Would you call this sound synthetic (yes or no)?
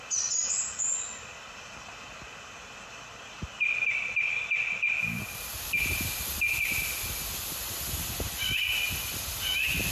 no